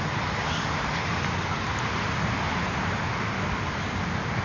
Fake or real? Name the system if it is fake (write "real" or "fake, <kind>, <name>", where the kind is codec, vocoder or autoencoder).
real